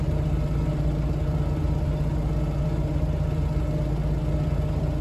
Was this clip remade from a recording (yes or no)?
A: no